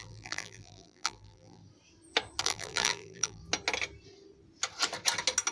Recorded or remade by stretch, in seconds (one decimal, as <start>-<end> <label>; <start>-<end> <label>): 0.0-1.6 remade; 1.6-2.4 recorded; 2.4-3.4 remade; 3.4-5.5 recorded